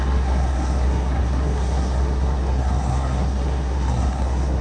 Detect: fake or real fake